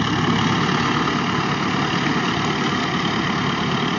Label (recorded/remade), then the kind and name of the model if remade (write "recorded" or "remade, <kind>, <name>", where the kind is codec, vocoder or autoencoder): recorded